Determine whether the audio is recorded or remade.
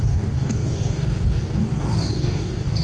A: remade